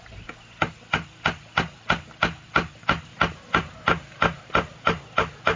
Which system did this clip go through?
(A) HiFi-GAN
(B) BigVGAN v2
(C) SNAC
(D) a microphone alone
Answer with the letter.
D